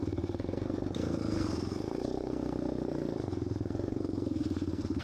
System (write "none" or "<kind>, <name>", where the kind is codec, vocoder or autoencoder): codec, SNAC